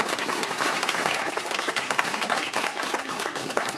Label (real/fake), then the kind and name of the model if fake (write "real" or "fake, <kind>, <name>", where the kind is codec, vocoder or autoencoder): fake, codec, SNAC